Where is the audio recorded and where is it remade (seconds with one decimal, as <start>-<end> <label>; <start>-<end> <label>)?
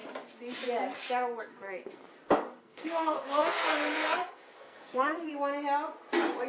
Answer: 0.0-1.4 recorded; 1.4-2.0 remade; 2.0-2.6 recorded; 2.6-5.3 remade; 5.3-6.5 recorded